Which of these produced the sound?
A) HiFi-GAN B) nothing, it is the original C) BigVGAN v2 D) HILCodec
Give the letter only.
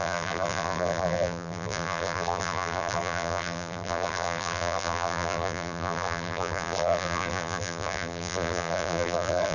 C